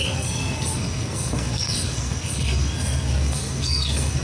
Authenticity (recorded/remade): remade